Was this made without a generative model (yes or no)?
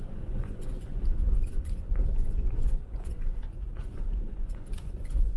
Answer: no